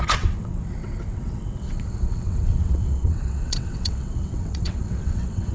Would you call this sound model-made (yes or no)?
yes